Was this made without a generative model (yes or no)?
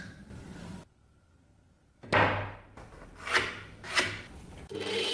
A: yes